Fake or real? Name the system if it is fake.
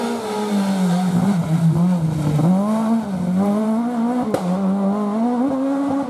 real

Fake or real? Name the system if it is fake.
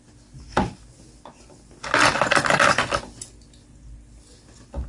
real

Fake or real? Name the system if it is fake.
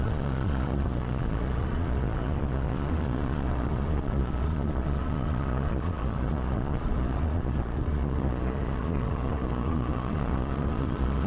fake, vocoder, Vocos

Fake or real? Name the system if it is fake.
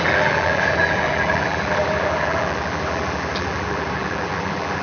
fake, vocoder, BigVGAN v2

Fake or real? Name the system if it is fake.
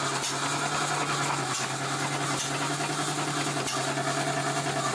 real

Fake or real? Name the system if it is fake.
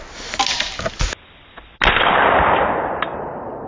real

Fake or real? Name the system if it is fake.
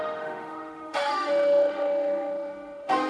fake, autoencoder, DAC-VAE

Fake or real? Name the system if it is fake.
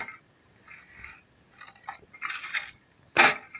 real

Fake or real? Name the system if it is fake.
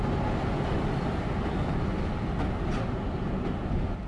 real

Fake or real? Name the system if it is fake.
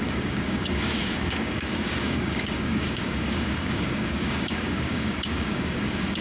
fake, codec, DAC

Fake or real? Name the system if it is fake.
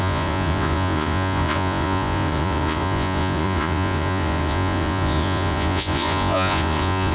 fake, vocoder, Vocos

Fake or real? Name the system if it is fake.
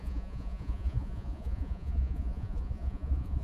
fake, vocoder, Vocos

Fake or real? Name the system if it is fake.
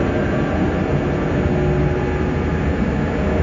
real